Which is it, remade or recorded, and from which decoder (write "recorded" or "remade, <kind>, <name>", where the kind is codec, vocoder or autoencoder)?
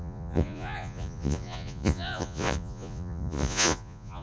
remade, vocoder, Vocos